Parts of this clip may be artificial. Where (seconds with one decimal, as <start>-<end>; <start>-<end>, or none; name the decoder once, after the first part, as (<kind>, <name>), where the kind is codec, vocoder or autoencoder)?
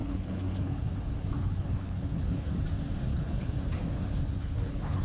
0.0-0.9 (codec, HILCodec); 1.4-2.5; 3.1-3.6; 4.4-5.0